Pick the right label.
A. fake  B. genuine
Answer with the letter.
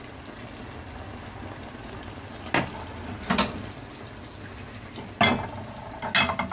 B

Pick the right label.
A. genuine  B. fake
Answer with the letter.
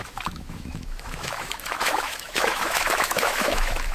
B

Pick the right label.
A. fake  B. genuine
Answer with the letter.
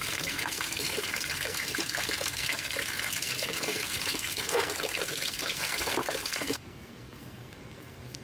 A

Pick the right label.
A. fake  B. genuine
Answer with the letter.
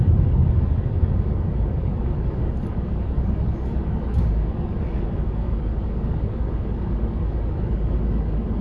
A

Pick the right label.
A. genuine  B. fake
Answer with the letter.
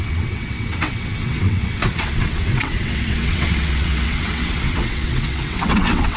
B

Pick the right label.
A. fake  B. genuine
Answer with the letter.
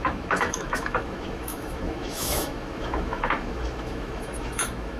A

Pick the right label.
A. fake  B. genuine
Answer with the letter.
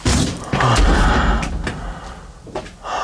B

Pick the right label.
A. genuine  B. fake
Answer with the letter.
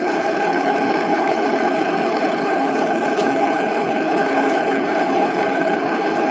B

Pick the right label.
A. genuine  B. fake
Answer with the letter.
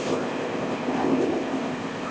B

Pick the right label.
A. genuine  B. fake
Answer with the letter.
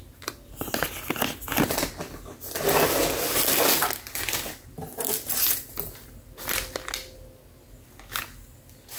A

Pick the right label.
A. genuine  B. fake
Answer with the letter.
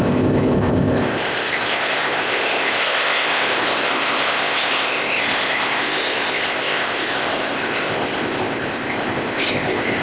B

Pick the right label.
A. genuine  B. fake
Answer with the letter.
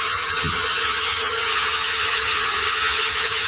B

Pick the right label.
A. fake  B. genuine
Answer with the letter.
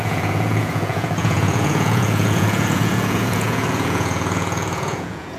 A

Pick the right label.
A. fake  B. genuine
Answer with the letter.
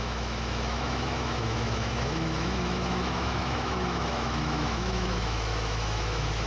A